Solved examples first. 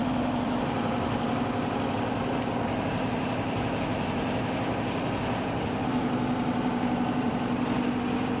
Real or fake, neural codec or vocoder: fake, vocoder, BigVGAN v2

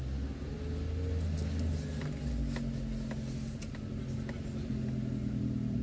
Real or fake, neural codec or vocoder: real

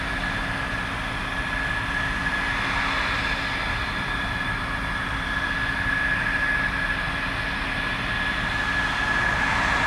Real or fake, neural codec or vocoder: real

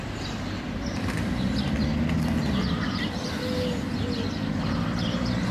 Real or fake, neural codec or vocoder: real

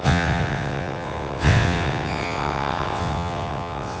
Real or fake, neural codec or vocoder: fake, vocoder, WaveNeXt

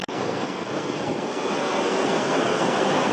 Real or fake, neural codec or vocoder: fake, codec, SNAC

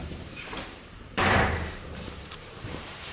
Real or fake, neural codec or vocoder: fake, vocoder, BigVGAN v2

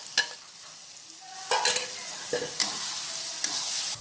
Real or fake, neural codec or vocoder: real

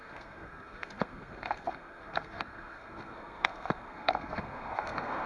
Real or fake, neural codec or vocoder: fake, codec, SNAC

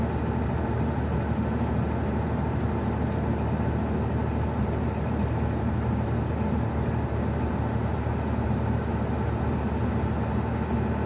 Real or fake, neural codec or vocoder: real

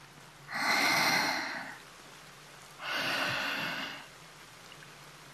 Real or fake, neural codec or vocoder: real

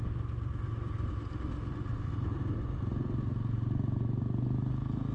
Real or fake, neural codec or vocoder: real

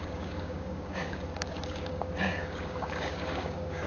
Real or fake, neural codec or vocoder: fake, codec, DAC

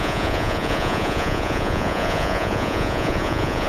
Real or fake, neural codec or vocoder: fake, vocoder, Vocos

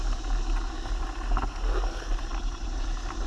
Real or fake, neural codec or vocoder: real